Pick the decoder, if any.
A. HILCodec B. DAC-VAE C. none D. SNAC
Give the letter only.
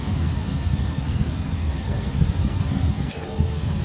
D